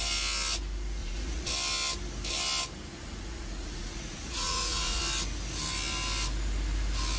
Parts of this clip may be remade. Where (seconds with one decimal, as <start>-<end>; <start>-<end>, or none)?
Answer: 1.0-1.5; 2.9-5.0